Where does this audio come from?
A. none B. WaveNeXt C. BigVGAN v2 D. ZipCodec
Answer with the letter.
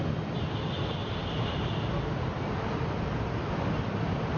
A